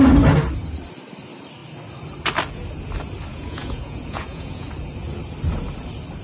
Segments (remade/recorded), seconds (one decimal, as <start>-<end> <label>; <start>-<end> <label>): 0.0-3.3 recorded; 3.3-4.7 remade; 4.7-6.2 recorded